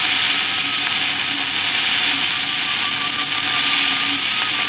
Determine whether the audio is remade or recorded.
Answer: recorded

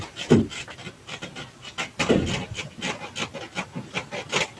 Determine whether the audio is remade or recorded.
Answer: recorded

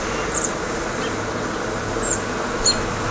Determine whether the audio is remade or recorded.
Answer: recorded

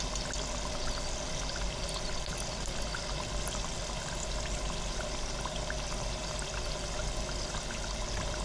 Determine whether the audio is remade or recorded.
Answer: recorded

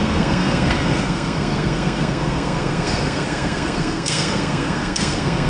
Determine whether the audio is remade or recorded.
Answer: remade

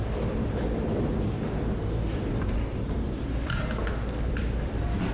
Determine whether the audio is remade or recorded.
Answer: remade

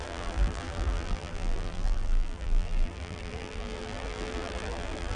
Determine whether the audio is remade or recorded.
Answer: remade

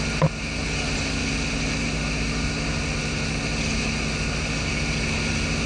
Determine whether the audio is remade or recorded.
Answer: recorded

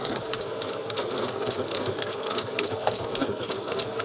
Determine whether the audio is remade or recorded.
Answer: remade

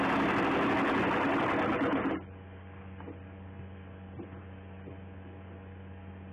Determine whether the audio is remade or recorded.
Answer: recorded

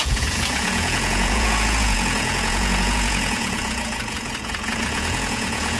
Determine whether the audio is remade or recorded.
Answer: remade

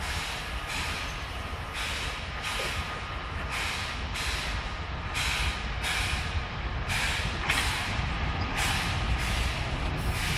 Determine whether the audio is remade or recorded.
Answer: recorded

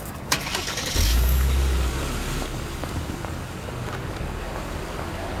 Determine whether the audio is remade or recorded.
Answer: remade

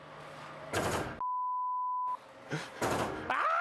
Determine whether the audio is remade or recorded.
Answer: recorded